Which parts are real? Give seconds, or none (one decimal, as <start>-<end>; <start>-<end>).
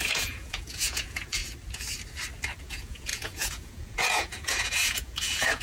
1.4-2.6